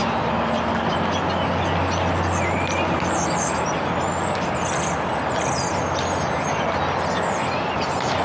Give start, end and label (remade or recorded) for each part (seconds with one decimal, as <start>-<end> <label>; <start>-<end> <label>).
0.0-8.2 recorded

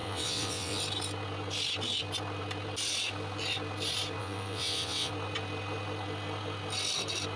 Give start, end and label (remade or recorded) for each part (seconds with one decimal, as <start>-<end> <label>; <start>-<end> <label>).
0.0-0.8 remade; 0.8-4.2 recorded; 4.2-5.1 remade; 5.1-7.4 recorded

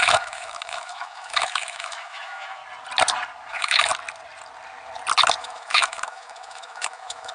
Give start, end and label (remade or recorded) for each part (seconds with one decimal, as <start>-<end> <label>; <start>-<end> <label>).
0.0-2.6 remade; 2.6-3.5 recorded; 3.5-3.9 remade; 3.9-5.4 recorded; 5.4-7.3 remade

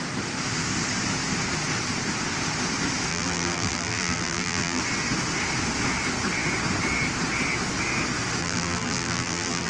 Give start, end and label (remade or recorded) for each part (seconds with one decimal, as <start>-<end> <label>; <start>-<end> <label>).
0.0-3.1 recorded; 3.1-4.8 remade; 4.8-8.4 recorded; 8.4-9.7 remade

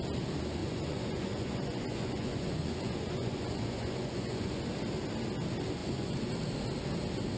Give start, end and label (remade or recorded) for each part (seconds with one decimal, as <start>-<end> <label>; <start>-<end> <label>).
0.0-0.6 recorded; 0.6-4.6 remade; 4.6-5.8 recorded; 5.8-6.3 remade; 6.3-7.4 recorded

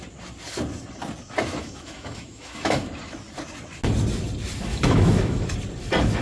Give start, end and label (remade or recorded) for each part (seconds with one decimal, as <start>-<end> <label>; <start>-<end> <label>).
0.0-1.6 recorded; 1.6-2.9 remade; 2.9-4.7 recorded; 4.7-5.5 remade; 5.5-6.2 recorded

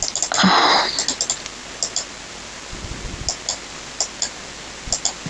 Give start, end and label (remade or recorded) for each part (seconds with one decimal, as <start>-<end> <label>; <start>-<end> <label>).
0.0-5.3 recorded